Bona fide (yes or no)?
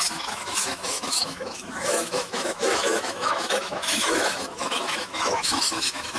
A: no